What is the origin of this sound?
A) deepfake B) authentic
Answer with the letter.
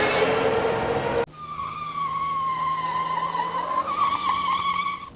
B